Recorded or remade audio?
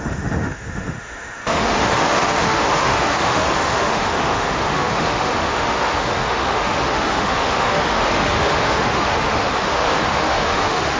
remade